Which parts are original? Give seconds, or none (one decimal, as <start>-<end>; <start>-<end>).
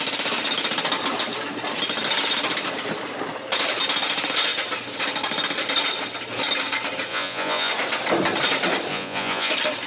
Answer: 0.0-7.1; 7.7-8.9; 9.5-9.9